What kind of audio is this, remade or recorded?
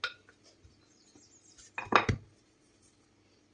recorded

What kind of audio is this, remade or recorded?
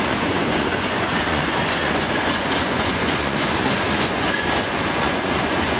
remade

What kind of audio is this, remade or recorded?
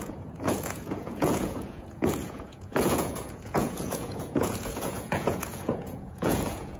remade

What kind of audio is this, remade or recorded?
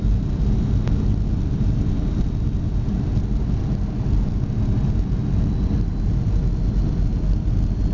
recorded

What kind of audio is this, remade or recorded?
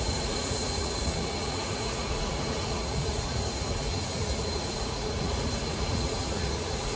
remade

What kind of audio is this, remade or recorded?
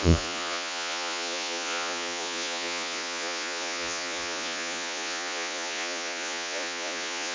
remade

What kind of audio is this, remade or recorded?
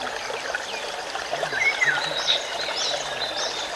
recorded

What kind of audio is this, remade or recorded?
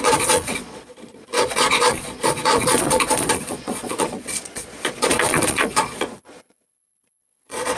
remade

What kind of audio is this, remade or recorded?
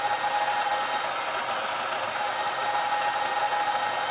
recorded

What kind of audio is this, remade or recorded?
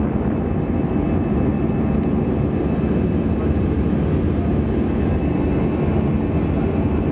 recorded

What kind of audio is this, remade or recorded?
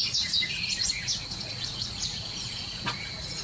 remade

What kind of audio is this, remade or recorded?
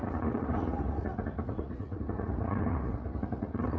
remade